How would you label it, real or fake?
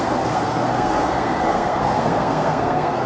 fake